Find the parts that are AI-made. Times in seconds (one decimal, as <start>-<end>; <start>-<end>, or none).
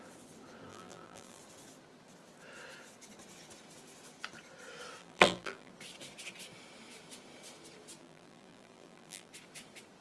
0.7-1.4; 5.0-5.7; 8.0-9.3